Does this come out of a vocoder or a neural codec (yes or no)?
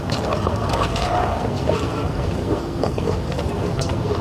yes